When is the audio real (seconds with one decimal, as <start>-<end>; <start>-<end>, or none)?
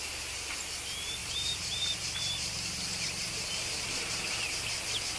0.0-1.2; 4.3-5.2